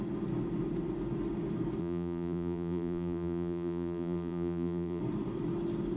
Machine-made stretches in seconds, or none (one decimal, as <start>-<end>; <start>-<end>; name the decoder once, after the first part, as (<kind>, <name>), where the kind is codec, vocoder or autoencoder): 1.8-5.0 (vocoder, BigVGAN v2)